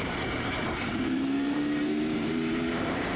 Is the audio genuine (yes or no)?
no